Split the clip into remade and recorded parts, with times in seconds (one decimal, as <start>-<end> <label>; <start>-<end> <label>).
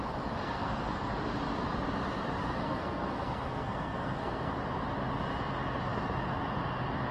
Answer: 0.0-0.4 recorded; 0.4-1.1 remade; 1.1-2.4 recorded; 2.4-4.5 remade; 4.5-7.1 recorded